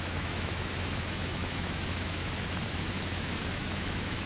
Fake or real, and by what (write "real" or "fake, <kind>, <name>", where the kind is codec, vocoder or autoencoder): fake, autoencoder, DAC-VAE